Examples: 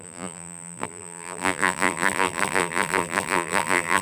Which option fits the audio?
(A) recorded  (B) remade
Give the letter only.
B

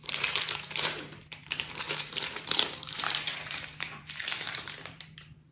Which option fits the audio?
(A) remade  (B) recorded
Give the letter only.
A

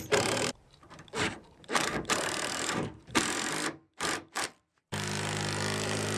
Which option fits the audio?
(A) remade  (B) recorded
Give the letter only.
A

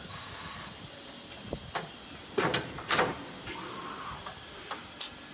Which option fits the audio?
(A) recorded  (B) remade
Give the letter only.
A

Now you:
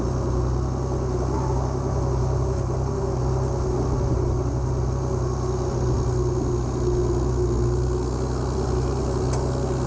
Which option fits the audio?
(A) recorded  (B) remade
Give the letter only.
A